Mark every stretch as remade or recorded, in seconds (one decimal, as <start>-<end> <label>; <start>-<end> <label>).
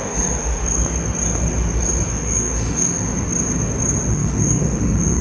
0.0-0.6 remade; 0.6-2.1 recorded; 2.1-3.1 remade; 3.1-4.1 recorded; 4.1-5.2 remade